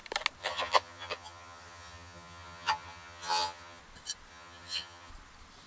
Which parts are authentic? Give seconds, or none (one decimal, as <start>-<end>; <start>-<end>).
0.0-0.4; 3.8-4.3; 5.1-5.7